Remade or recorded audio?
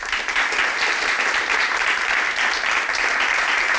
recorded